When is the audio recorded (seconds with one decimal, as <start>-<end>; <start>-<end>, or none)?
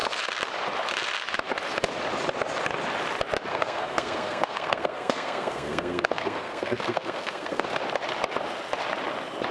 0.0-3.5; 7.7-9.5